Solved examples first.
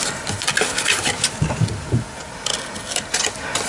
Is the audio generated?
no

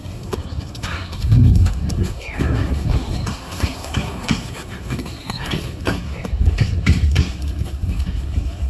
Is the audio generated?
yes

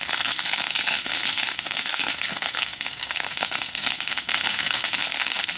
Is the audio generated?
yes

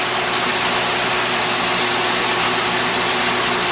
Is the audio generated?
no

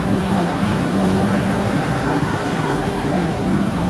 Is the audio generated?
yes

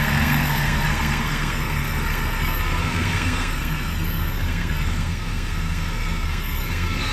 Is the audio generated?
yes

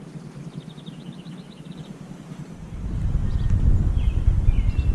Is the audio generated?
no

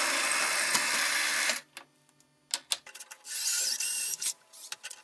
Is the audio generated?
no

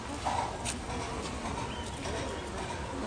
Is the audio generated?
no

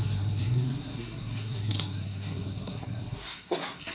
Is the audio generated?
yes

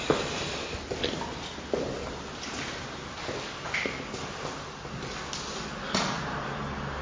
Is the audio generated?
no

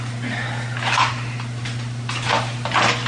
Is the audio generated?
no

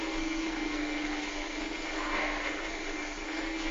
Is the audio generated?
yes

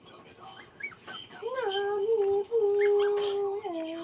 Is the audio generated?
no